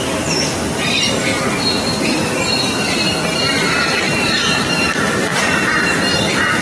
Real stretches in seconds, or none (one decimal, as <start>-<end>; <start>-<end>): 1.3-2.0